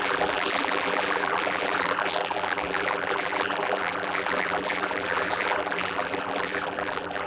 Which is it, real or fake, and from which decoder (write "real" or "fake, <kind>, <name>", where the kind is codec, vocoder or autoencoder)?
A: fake, vocoder, BigVGAN v2